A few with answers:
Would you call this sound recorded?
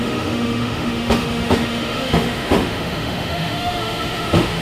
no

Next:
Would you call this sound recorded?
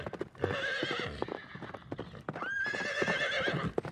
yes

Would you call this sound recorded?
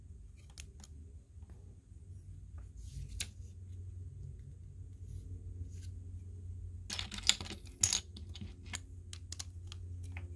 yes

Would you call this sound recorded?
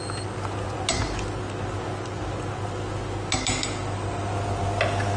yes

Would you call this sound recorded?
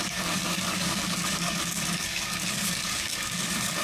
no